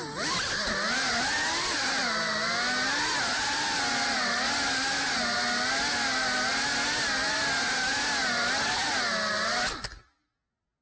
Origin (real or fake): real